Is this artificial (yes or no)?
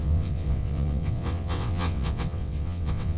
yes